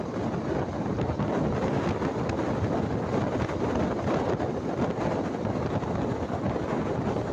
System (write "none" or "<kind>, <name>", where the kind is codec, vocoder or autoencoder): none